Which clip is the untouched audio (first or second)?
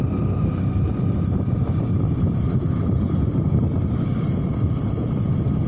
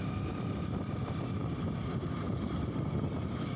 second